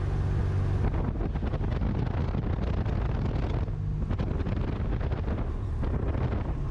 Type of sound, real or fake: real